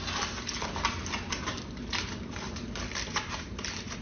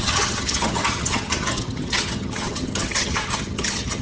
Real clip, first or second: first